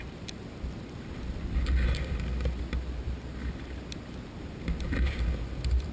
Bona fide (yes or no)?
yes